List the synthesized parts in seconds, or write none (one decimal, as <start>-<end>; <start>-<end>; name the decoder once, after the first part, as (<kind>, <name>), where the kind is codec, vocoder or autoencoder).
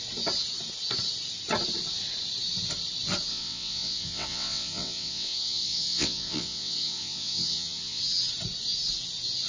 3.3-8.0 (vocoder, WaveNeXt)